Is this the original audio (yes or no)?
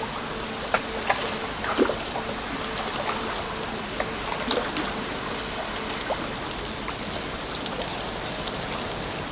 yes